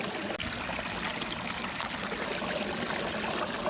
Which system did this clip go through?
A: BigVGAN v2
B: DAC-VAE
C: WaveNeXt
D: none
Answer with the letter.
D